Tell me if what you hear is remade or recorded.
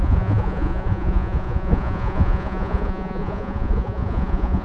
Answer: remade